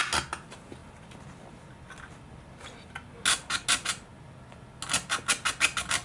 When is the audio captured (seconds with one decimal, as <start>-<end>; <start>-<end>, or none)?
0.0-6.0